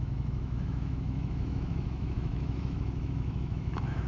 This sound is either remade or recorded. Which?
remade